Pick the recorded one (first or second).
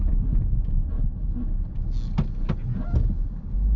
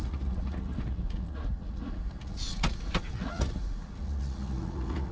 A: first